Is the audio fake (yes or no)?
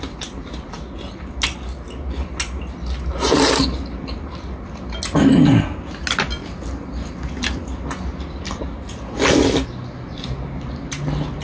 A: no